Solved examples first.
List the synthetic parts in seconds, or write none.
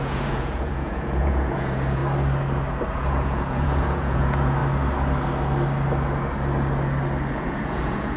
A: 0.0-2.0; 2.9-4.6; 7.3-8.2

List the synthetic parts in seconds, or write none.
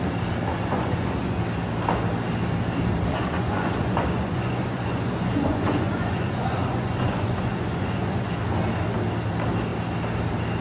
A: 0.5-1.4; 3.1-8.3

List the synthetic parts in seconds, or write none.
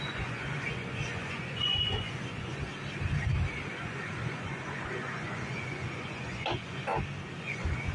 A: 0.0-2.7; 3.7-6.9; 7.4-7.9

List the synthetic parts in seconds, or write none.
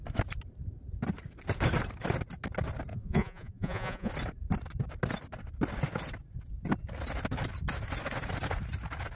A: 2.9-4.1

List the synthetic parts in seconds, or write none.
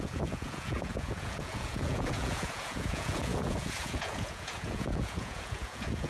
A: 0.0-6.1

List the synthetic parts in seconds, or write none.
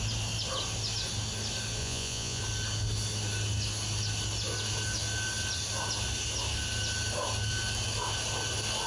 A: 1.8-2.4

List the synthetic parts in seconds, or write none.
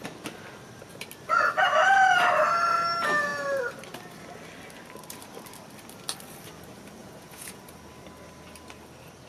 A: 7.0-7.6